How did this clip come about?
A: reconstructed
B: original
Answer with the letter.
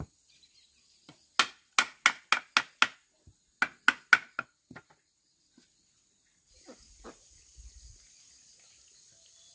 B